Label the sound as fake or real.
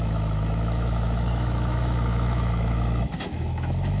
fake